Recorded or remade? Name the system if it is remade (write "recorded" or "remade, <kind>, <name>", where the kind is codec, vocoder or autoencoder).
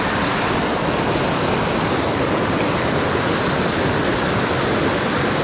recorded